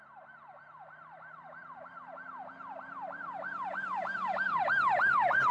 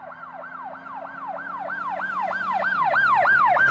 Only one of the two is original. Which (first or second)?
second